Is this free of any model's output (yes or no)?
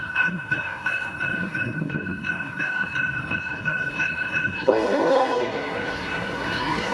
no